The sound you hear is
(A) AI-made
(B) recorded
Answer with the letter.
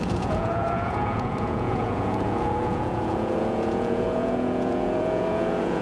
A